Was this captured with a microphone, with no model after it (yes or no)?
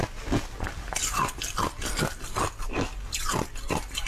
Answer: yes